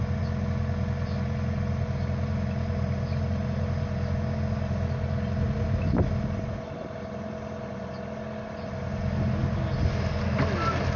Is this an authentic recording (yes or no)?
yes